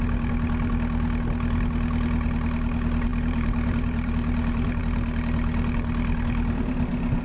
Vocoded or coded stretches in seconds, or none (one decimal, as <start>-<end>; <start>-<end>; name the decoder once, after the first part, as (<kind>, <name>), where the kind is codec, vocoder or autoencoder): 3.1-4.8 (vocoder, BigVGAN v2)